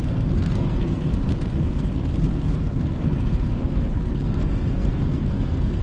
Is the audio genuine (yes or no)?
no